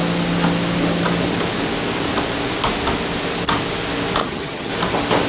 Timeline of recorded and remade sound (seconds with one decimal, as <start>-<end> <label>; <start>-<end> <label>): 0.0-4.2 recorded; 4.2-4.7 remade; 4.7-5.3 recorded